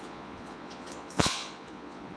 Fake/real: fake